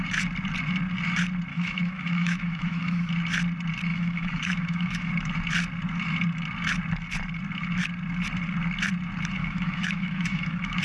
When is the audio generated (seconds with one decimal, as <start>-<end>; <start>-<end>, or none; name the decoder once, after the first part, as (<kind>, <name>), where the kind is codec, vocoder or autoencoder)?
1.5-3.1 (autoencoder, DAC-VAE); 3.9-5.1; 9.4-10.8